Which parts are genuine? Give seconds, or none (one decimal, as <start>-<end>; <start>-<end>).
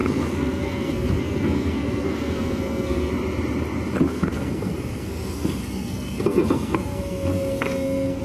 3.1-4.1